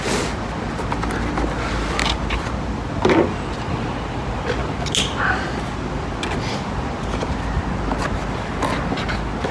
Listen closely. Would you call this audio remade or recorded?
recorded